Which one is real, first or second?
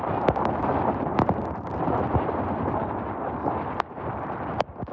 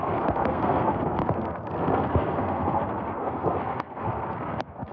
first